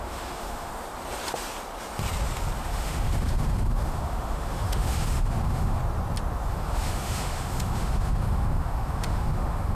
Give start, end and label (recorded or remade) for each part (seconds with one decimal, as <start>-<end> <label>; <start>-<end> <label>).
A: 0.0-0.7 remade; 0.7-2.6 recorded; 2.6-5.8 remade; 5.8-6.5 recorded; 6.5-9.7 remade